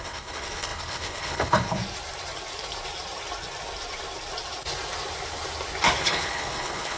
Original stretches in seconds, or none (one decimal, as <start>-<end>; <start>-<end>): 1.8-6.0